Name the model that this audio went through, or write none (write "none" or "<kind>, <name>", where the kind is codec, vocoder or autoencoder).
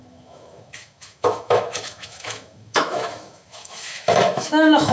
autoencoder, DAC-VAE